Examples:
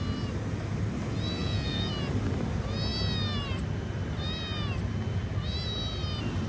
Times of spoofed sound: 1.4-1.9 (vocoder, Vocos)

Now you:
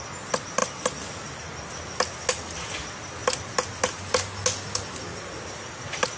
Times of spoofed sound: none

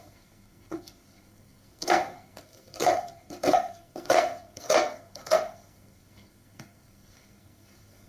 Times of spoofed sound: 0.0-8.1 (codec, SNAC)

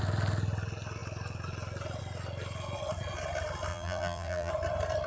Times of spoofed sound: 3.7-4.5 (vocoder, BigVGAN v2)

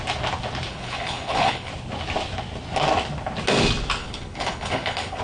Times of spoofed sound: 0.7-1.7 (codec, HILCodec); 4.0-5.2

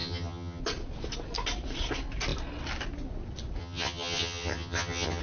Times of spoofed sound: 0.0-0.6 (vocoder, HiFi-GAN); 3.6-5.2

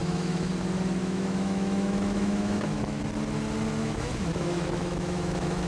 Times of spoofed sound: 0.0-0.5 (autoencoder, DAC-VAE); 1.0-3.0; 3.8-5.7

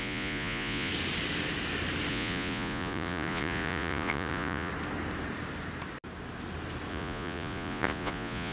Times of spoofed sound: 0.0-0.9 (vocoder, Vocos); 2.1-4.7; 6.9-8.5